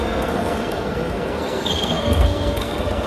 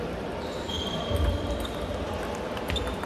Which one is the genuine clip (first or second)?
second